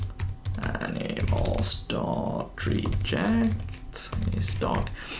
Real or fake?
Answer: real